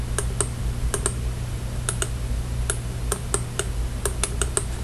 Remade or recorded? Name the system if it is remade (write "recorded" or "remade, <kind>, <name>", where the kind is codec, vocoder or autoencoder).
recorded